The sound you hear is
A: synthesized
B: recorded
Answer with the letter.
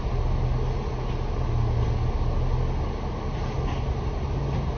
B